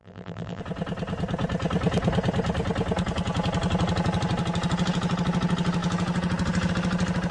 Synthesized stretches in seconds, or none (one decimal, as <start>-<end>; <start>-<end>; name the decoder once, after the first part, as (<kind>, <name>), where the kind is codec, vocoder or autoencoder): 0.0-0.6 (vocoder, BigVGAN v2)